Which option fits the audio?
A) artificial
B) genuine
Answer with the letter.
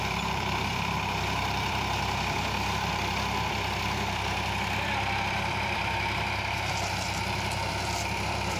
A